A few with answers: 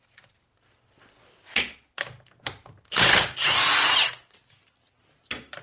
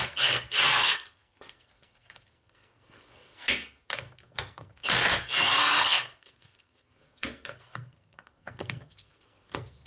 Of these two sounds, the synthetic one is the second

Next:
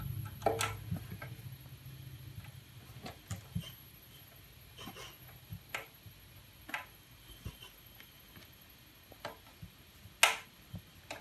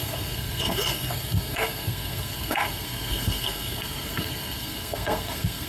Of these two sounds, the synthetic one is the second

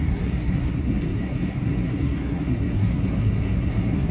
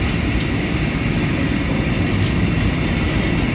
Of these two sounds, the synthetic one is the first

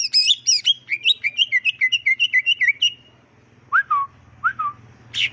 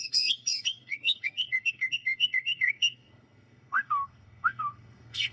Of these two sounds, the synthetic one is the second